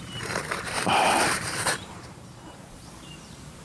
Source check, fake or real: fake